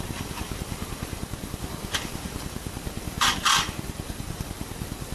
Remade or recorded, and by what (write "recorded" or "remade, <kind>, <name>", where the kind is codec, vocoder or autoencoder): remade, vocoder, BigVGAN v2